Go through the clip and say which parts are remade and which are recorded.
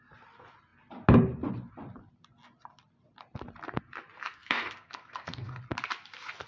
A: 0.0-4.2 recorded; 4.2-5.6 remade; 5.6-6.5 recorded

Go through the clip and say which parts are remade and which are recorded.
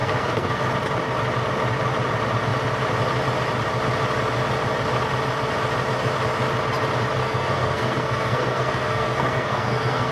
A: 0.0-0.7 remade; 0.7-7.2 recorded; 7.2-10.1 remade